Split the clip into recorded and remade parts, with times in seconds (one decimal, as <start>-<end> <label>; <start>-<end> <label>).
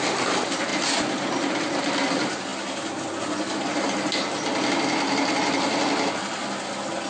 0.0-7.1 recorded